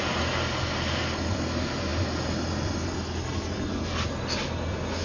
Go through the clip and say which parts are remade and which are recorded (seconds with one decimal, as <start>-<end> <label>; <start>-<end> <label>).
0.0-5.0 recorded